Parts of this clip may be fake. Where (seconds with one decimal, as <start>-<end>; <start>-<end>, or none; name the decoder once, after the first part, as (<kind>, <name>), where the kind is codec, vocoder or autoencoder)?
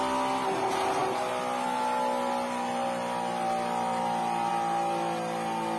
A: none